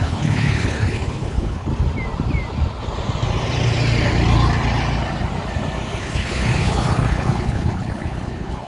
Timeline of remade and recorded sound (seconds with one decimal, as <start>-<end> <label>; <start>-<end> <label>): 0.0-1.7 remade; 1.7-6.0 recorded; 6.0-8.7 remade

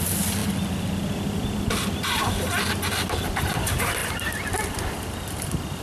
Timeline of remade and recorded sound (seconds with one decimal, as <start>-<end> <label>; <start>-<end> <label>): 0.0-5.8 recorded

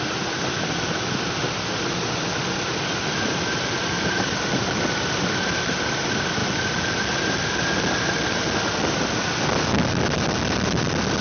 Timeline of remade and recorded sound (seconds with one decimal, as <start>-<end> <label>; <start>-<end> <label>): 0.0-11.2 recorded

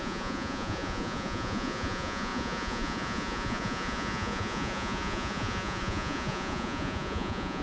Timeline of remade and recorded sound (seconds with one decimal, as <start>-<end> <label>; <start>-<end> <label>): 0.0-7.6 remade

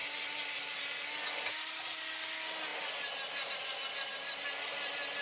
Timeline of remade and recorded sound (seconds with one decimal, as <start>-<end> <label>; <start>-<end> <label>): 0.0-5.2 recorded